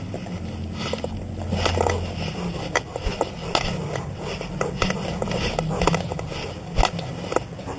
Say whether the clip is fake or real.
real